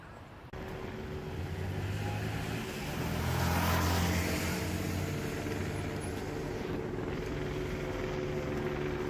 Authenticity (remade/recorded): recorded